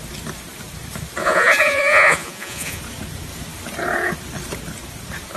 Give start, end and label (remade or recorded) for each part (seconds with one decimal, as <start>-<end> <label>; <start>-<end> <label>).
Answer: 0.0-1.2 recorded; 1.2-2.8 remade; 2.8-5.4 recorded

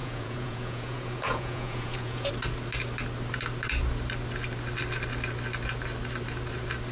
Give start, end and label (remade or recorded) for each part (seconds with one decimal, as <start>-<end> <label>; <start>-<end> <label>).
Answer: 0.0-2.3 remade; 2.3-6.9 recorded